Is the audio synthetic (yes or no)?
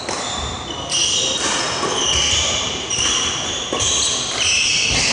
no